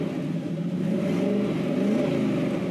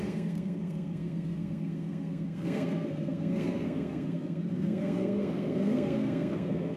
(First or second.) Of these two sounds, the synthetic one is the second